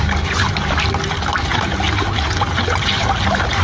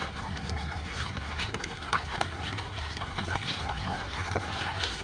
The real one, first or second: first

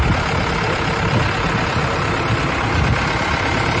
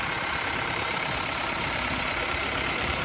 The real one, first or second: first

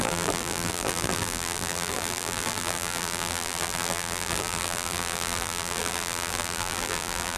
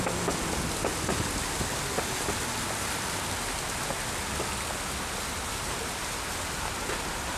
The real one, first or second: second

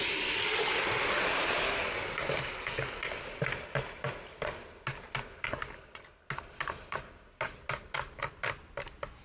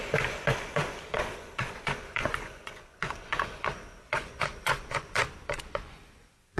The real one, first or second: first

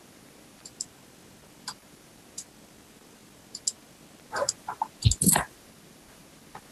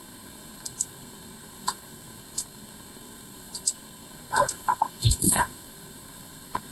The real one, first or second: first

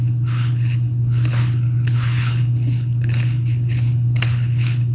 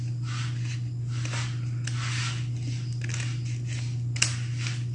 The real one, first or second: second